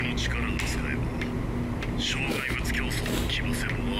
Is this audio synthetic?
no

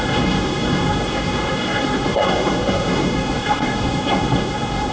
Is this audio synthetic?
yes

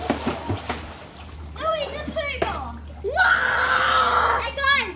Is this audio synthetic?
no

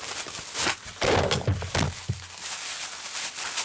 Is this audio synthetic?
no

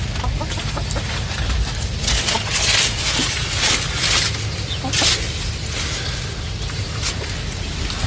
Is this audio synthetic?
no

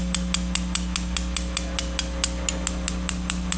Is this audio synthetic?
no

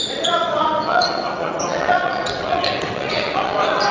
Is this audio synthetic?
yes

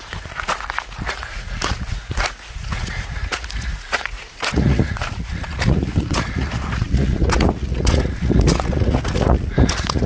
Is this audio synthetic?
yes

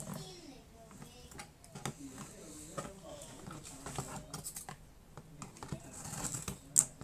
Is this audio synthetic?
no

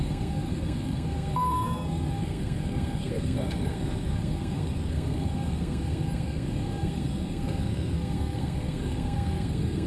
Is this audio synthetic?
yes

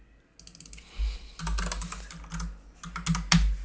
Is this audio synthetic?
no